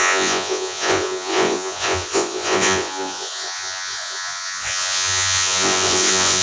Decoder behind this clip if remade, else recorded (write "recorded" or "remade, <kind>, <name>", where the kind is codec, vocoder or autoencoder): remade, vocoder, Vocos